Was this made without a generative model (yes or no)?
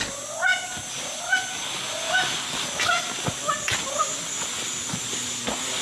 yes